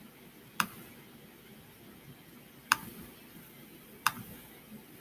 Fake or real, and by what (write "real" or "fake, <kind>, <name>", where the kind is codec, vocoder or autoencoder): real